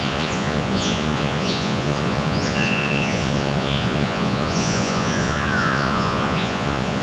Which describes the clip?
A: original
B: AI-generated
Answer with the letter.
B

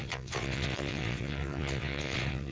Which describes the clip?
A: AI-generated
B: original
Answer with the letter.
A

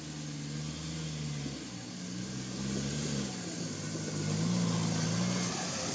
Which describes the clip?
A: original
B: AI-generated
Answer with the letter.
A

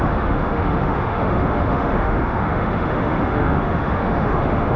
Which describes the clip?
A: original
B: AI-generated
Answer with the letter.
B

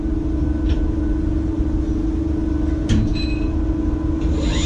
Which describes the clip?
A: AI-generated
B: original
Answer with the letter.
B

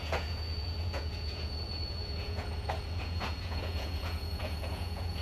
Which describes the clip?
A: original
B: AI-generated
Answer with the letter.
B